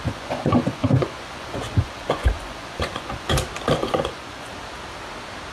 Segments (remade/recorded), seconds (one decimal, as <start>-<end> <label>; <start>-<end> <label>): 0.0-3.3 remade; 3.3-3.8 recorded; 3.8-4.5 remade; 4.5-5.5 recorded